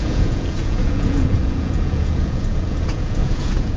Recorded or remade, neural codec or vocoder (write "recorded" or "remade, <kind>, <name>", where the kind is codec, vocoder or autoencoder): remade, vocoder, Vocos